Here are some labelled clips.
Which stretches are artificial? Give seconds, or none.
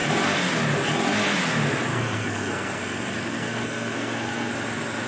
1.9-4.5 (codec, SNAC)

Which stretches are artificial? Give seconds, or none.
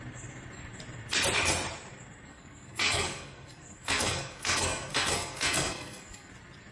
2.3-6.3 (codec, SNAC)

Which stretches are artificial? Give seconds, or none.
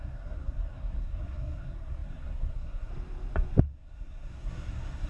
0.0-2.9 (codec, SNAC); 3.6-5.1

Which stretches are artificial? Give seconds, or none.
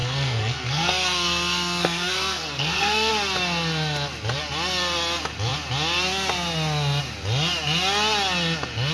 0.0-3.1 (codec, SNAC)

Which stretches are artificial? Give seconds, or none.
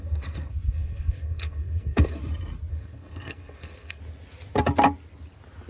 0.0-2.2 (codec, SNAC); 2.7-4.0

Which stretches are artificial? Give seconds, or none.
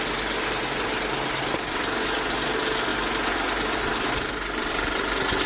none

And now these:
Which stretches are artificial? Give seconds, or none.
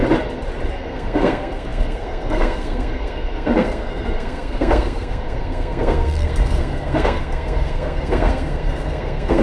0.7-9.4 (codec, SNAC)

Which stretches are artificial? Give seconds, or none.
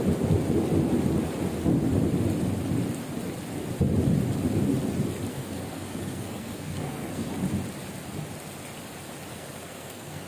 5.3-7.3 (codec, SNAC); 9.3-10.3